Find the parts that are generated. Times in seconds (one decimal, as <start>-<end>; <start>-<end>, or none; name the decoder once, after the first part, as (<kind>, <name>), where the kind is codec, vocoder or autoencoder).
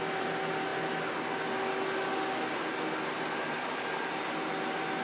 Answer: none